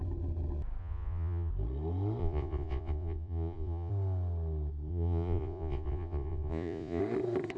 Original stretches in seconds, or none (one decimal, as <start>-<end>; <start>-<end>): 0.0-0.8; 1.5-2.2; 3.9-4.9; 7.0-7.6